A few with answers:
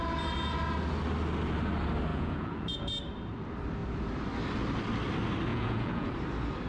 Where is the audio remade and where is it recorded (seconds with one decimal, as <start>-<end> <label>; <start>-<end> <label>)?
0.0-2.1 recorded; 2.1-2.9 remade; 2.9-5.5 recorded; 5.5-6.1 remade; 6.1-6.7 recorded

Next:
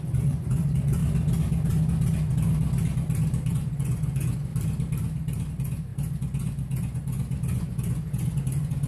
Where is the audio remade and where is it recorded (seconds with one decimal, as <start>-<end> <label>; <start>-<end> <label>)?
0.0-1.0 remade; 1.0-3.5 recorded; 3.5-4.5 remade; 4.5-5.5 recorded; 5.5-8.9 remade

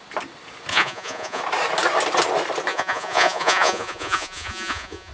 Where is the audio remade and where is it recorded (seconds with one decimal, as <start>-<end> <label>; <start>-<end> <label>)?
0.0-0.7 recorded; 0.7-1.4 remade; 1.4-2.7 recorded; 2.7-5.1 remade

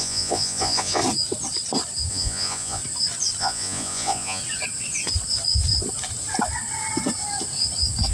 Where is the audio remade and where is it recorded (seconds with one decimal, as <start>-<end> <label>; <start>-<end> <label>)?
0.0-1.0 remade; 1.0-2.1 recorded; 2.1-2.8 remade; 2.8-3.4 recorded; 3.4-4.4 remade; 4.4-8.1 recorded